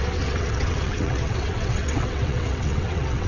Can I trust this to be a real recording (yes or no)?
no